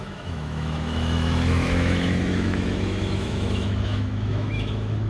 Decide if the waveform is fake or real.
fake